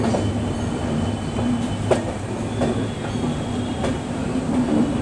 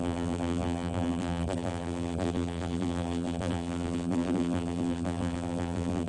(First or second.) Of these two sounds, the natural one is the first